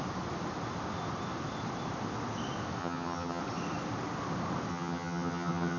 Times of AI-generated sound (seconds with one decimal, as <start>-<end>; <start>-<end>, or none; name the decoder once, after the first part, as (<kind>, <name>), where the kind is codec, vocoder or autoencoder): 2.8-3.4 (vocoder, HiFi-GAN); 4.7-5.8